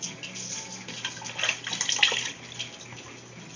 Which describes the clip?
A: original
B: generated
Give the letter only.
A